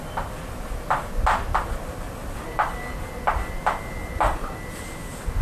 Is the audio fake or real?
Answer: real